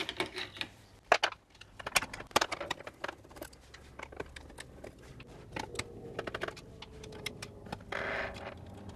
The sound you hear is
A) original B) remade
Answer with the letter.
A